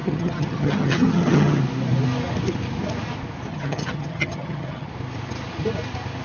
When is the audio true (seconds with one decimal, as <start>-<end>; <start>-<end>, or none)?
1.6-3.5; 4.9-6.2